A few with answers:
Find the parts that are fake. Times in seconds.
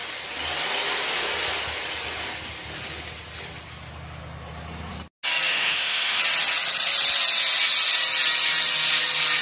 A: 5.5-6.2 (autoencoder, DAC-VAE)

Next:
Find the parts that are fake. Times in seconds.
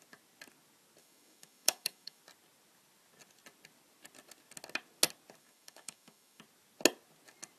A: 1.0-2.2 (autoencoder, DAC-VAE); 5.4-6.4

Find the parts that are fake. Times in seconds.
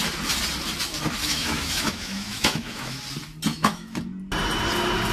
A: 1.2-3.0 (autoencoder, DAC-VAE); 3.5-4.0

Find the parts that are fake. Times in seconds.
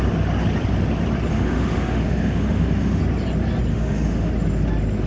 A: 1.3-3.0 (autoencoder, DAC-VAE); 3.7-4.3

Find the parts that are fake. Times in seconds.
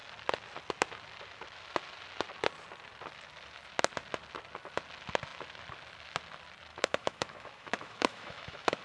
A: 6.7-8.8 (autoencoder, DAC-VAE)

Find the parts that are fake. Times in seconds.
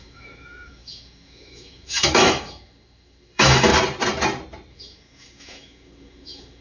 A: 0.0-3.7 (autoencoder, DAC-VAE); 4.7-6.6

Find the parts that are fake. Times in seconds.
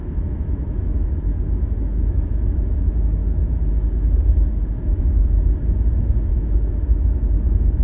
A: 0.0-7.8 (autoencoder, DAC-VAE)